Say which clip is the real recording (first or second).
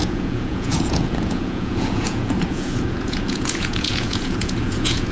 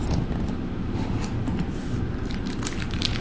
second